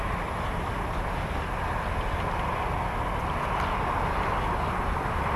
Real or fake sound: real